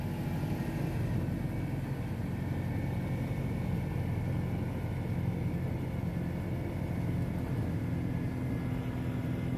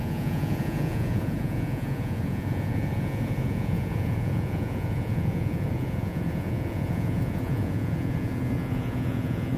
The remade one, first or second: second